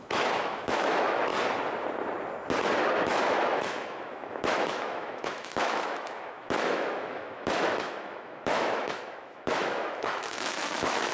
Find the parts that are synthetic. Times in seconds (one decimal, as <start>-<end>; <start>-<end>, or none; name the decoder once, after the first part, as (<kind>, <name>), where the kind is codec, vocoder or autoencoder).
0.0-1.3 (autoencoder, DAC-VAE); 2.9-11.1